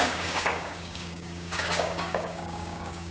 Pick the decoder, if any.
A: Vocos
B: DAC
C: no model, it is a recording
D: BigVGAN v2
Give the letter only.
B